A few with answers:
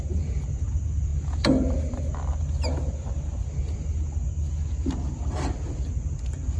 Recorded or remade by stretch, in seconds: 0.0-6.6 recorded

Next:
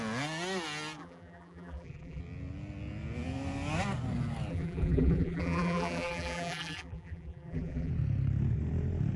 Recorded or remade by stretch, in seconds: 0.0-1.0 recorded; 1.0-2.2 remade; 2.2-4.5 recorded; 4.5-7.9 remade; 7.9-9.2 recorded

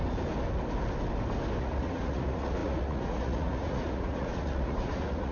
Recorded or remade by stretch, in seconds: 0.0-1.6 recorded; 1.6-5.3 remade

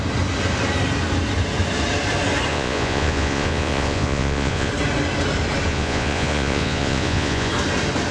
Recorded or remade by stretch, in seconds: 0.0-2.5 recorded; 2.5-4.7 remade; 4.7-5.7 recorded; 5.7-7.5 remade; 7.5-8.1 recorded

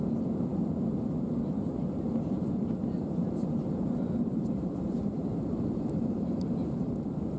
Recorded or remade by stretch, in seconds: 0.0-3.2 recorded; 3.2-7.0 remade; 7.0-7.4 recorded